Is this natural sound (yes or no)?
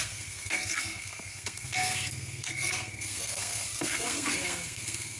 no